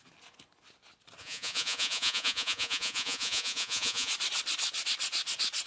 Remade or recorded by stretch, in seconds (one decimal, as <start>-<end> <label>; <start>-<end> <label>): 0.0-1.2 recorded; 1.2-4.1 remade; 4.1-5.7 recorded